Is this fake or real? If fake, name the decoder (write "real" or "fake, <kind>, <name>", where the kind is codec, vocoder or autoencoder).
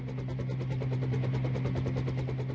real